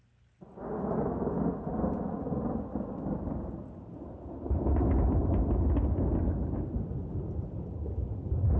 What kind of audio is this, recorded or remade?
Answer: recorded